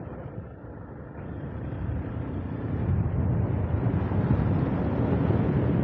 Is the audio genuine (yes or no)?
yes